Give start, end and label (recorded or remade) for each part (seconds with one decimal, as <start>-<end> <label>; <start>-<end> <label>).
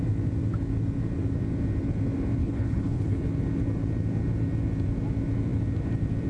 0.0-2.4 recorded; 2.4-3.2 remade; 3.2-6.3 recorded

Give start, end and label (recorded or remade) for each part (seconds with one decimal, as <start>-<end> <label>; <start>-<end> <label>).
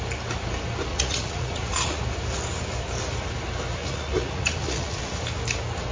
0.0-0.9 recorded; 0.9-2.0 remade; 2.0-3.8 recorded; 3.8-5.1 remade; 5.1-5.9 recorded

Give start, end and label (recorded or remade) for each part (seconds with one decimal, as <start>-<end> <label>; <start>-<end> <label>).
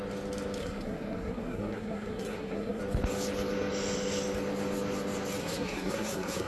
0.0-0.6 recorded; 0.6-2.8 remade; 2.8-5.4 recorded; 5.4-6.5 remade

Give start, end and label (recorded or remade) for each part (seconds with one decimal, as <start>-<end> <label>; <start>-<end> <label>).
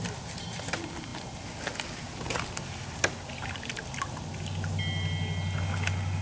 0.0-6.2 recorded